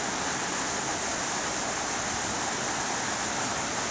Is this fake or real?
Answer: real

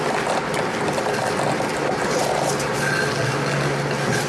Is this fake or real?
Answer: real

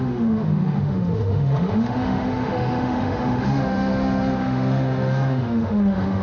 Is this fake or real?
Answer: fake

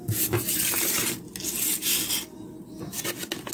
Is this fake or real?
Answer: real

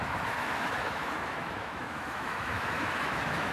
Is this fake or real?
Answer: fake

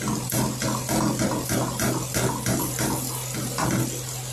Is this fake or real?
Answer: real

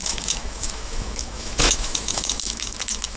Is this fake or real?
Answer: fake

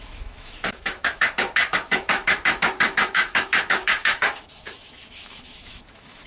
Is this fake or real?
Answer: fake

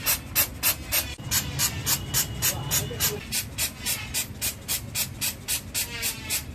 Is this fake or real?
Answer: real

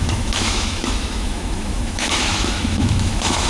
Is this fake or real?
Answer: fake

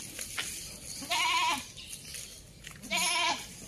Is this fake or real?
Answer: real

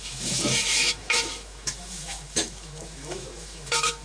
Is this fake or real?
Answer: fake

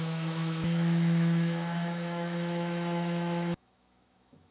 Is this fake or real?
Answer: fake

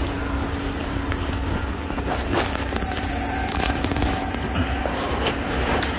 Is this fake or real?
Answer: real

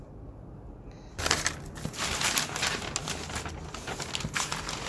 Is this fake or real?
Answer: real